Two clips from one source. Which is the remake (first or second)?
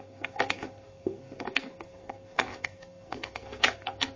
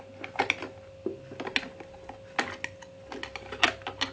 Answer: first